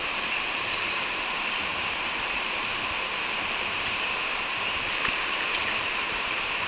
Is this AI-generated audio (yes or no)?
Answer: yes